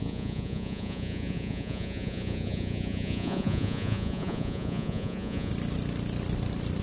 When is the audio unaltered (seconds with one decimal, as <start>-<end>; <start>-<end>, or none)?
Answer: 5.5-6.8